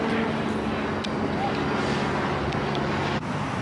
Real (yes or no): yes